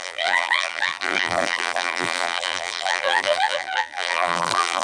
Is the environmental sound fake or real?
fake